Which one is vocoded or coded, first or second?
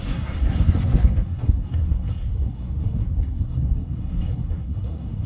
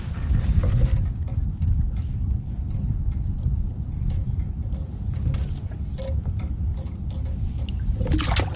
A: first